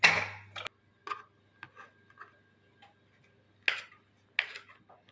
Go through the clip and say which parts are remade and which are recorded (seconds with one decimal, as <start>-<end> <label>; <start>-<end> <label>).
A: 0.0-5.1 recorded